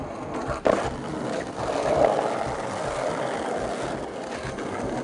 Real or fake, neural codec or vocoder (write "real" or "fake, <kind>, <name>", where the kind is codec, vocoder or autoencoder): real